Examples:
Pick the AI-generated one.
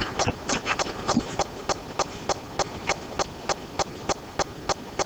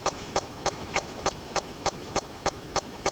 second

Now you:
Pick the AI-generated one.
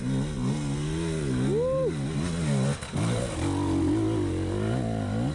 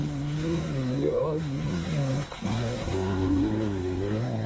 second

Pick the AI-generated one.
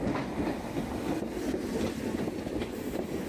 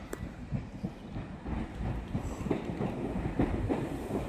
second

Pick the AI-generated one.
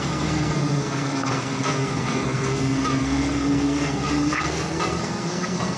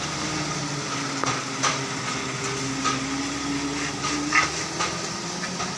first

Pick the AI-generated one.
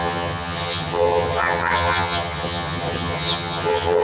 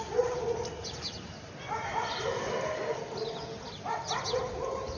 first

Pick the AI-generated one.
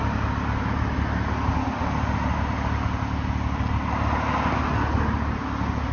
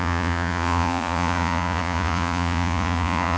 second